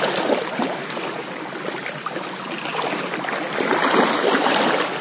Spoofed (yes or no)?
no